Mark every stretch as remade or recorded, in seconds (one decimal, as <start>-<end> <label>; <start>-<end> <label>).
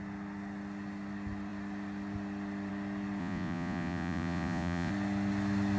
0.0-3.2 recorded; 3.2-4.9 remade; 4.9-5.8 recorded